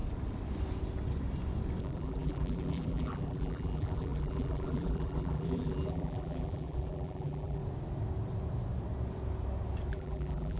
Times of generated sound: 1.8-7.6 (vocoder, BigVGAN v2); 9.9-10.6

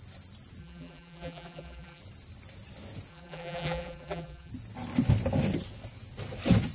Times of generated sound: 0.6-2.0 (vocoder, BigVGAN v2); 3.1-4.5

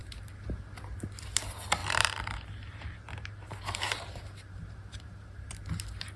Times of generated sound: 0.0-0.6 (vocoder, BigVGAN v2); 1.8-5.5

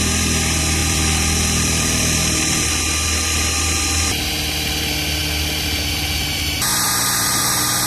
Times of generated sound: 0.8-2.2 (vocoder, BigVGAN v2); 6.7-7.3